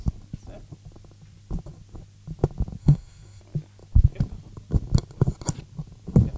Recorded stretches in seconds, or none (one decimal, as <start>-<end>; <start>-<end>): 0.0-2.8; 3.4-6.4